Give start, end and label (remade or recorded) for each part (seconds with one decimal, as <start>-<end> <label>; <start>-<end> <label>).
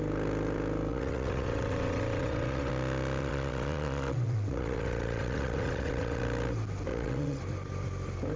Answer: 0.0-0.9 recorded; 0.9-2.7 remade; 2.7-3.2 recorded; 3.2-6.2 remade; 6.2-6.9 recorded; 6.9-7.4 remade; 7.4-8.4 recorded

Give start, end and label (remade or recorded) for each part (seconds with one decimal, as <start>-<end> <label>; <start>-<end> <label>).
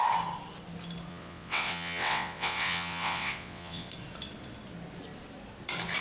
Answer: 0.0-1.1 recorded; 1.1-3.9 remade; 3.9-6.0 recorded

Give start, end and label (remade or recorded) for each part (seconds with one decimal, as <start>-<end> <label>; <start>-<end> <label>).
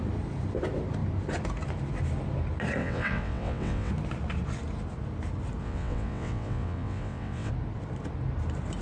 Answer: 0.0-2.8 recorded; 2.8-3.9 remade; 3.9-5.6 recorded; 5.6-7.5 remade; 7.5-8.8 recorded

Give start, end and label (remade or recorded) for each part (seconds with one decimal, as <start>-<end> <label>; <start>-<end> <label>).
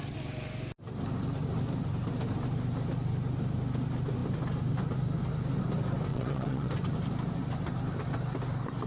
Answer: 0.0-6.1 recorded; 6.1-6.7 remade; 6.7-8.9 recorded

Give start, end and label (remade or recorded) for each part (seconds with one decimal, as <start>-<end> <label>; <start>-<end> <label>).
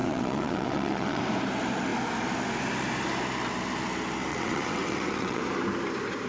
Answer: 0.0-1.2 remade; 1.2-4.3 recorded; 4.3-5.4 remade; 5.4-6.3 recorded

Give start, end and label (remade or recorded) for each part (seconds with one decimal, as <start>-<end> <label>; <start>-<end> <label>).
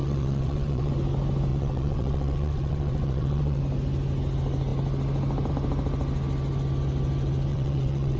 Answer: 0.0-0.9 remade; 0.9-1.5 recorded; 1.5-3.6 remade; 3.6-7.5 recorded; 7.5-8.2 remade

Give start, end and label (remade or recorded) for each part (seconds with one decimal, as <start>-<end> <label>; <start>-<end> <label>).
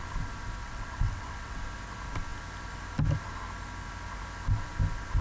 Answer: 0.0-0.6 recorded; 0.6-1.6 remade; 1.6-5.2 recorded